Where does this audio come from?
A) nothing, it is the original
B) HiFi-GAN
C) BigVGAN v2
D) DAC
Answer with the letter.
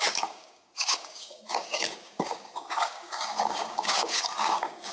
D